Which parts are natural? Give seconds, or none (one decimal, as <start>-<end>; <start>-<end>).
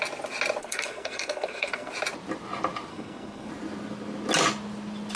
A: 0.0-0.6; 1.9-2.9; 3.5-5.2